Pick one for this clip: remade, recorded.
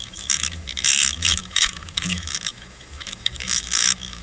remade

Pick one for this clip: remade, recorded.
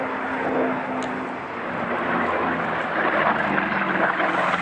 recorded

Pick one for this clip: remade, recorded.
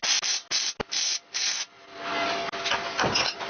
recorded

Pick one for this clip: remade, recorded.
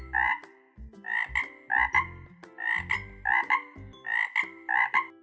recorded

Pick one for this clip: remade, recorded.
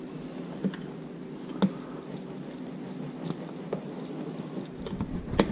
recorded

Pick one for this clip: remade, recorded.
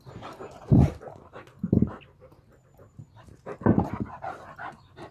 recorded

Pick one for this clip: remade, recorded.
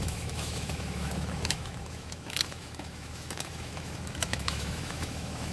remade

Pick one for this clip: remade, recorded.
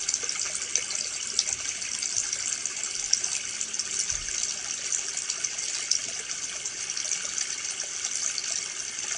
recorded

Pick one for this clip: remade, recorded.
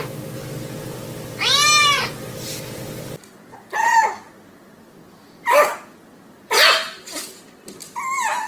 recorded